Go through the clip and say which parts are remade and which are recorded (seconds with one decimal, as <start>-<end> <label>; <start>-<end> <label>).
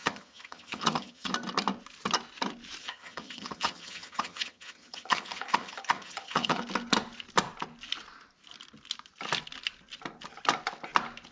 0.0-1.3 remade; 1.3-2.8 recorded; 2.8-6.6 remade; 6.6-11.3 recorded